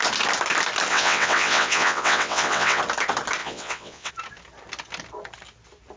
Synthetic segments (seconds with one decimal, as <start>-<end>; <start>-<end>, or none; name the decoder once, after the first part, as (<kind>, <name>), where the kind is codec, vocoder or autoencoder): 0.9-2.8 (vocoder, WaveNeXt); 3.4-4.1